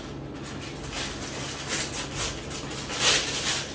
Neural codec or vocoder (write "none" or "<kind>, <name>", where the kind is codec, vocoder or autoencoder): none